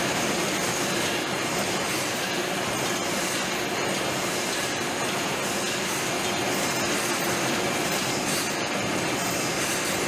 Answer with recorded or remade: recorded